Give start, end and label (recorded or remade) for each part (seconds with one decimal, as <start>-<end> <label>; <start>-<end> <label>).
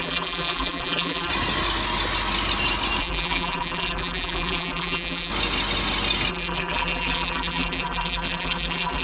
0.0-1.3 remade; 1.3-3.0 recorded; 3.0-5.3 remade; 5.3-6.3 recorded; 6.3-9.0 remade